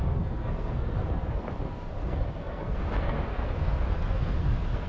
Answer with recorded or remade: remade